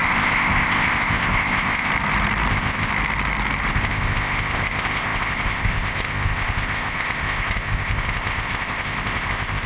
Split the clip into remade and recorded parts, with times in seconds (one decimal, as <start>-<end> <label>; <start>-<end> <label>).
0.0-1.9 remade; 1.9-2.5 recorded; 2.5-2.9 remade; 2.9-3.7 recorded; 3.7-9.7 remade